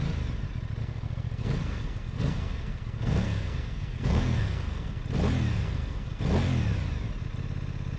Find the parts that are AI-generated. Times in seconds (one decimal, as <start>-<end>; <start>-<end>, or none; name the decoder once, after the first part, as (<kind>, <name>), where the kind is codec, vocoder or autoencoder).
0.8-5.0 (codec, SNAC); 5.5-6.2